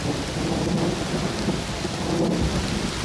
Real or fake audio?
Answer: real